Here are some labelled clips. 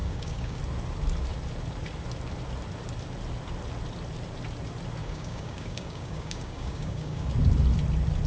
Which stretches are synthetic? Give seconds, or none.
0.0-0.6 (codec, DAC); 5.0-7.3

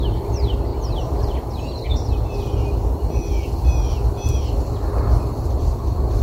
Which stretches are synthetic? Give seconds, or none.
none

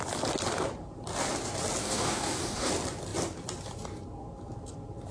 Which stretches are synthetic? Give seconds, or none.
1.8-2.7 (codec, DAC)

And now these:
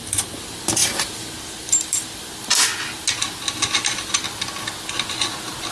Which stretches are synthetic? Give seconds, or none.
none